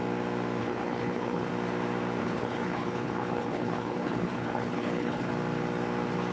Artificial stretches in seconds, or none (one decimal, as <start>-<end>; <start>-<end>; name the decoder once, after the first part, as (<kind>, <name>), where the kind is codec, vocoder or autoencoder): 0.6-1.5 (codec, HILCodec); 2.2-5.3